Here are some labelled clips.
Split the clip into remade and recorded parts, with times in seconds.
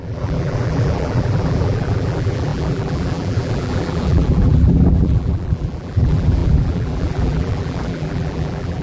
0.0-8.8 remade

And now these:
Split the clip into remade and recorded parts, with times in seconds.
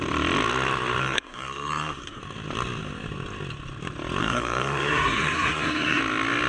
0.0-1.0 recorded; 1.0-2.2 remade; 2.2-4.2 recorded; 4.2-6.0 remade; 6.0-6.5 recorded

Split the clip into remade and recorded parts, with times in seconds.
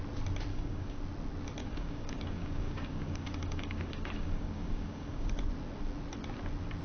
0.0-0.5 recorded; 0.5-1.0 remade; 1.0-1.6 recorded; 1.6-5.3 remade; 5.3-6.8 recorded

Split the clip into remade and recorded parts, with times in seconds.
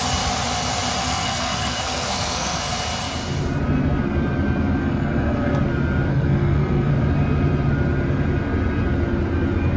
0.0-1.0 recorded; 1.0-2.6 remade; 2.6-4.8 recorded; 4.8-5.6 remade; 5.6-6.1 recorded; 6.1-6.9 remade; 6.9-9.8 recorded